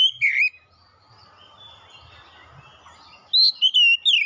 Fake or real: real